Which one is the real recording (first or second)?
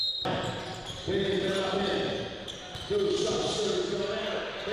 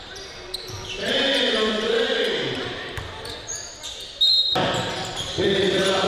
first